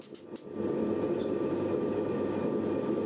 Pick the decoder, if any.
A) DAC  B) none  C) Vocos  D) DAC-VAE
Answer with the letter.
B